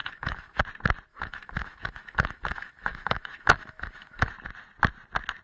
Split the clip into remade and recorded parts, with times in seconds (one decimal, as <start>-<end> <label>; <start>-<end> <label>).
0.0-0.6 remade; 0.6-1.1 recorded; 1.1-4.3 remade; 4.3-5.4 recorded